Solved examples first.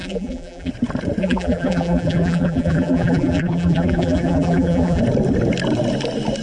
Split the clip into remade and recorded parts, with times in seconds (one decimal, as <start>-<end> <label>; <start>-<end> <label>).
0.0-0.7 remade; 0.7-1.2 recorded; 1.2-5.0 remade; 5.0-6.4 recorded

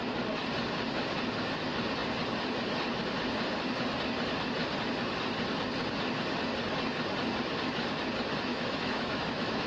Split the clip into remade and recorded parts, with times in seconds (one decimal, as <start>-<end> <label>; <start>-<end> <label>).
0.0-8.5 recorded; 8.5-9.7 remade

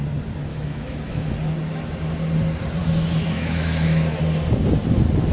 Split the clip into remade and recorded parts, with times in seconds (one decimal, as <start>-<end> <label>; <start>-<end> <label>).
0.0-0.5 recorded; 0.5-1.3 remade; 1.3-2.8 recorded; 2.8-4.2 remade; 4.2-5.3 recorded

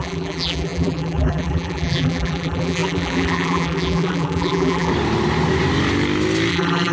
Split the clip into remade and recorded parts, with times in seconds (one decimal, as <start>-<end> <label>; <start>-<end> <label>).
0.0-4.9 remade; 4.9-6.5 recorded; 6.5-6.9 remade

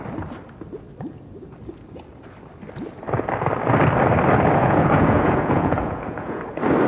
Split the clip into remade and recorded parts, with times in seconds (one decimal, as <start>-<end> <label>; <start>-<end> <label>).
0.0-4.6 recorded; 4.6-6.4 remade; 6.4-6.9 recorded